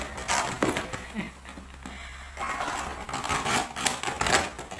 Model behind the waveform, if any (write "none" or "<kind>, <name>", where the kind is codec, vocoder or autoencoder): none